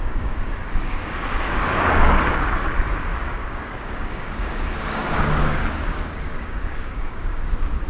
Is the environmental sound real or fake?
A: fake